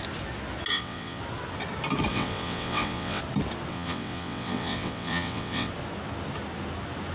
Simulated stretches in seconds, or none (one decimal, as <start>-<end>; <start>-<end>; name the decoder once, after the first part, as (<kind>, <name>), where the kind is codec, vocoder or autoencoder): 0.7-1.2 (vocoder, WaveNeXt); 2.1-3.2; 3.7-5.7